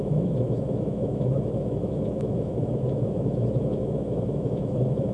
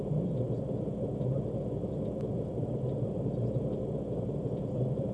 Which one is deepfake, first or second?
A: first